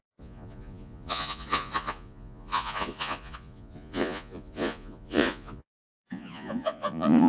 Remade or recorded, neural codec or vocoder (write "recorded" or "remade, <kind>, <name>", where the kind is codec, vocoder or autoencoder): remade, vocoder, Vocos